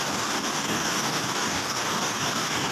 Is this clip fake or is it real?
fake